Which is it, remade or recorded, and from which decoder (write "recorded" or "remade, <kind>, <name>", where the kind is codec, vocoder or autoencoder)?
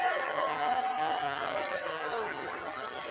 remade, vocoder, HiFi-GAN